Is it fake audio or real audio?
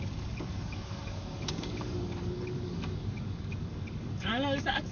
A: fake